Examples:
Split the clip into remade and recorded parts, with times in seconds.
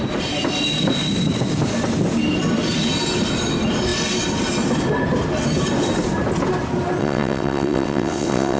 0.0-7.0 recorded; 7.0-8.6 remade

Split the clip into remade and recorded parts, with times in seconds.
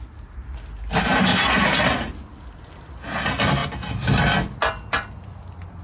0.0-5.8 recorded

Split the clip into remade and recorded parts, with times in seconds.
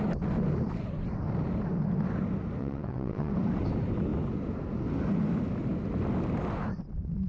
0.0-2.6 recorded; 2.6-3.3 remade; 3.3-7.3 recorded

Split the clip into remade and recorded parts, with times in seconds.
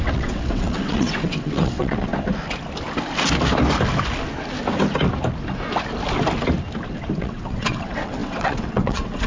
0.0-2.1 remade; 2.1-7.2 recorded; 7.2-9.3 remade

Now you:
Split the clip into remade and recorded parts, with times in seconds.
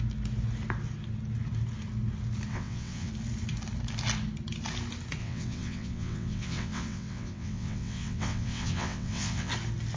0.0-2.5 recorded; 2.5-3.1 remade; 3.1-5.2 recorded; 5.2-9.5 remade; 9.5-10.0 recorded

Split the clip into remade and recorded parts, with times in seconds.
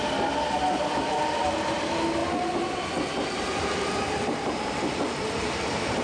0.0-6.0 recorded